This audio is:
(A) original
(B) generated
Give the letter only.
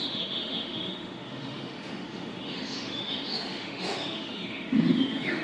B